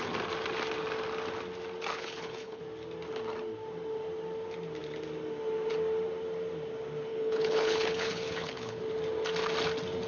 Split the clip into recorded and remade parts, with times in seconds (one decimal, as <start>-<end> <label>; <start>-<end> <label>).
0.0-1.9 recorded; 1.9-2.6 remade; 2.6-7.1 recorded; 7.1-8.8 remade; 8.8-10.1 recorded